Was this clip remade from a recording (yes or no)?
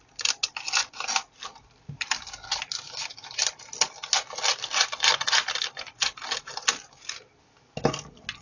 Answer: no